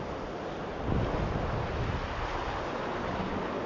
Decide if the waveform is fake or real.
real